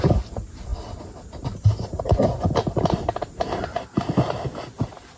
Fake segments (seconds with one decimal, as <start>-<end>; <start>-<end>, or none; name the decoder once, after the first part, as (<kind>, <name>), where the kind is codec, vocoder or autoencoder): none